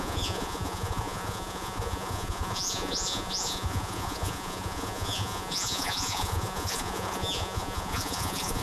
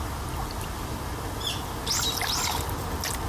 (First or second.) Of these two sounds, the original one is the second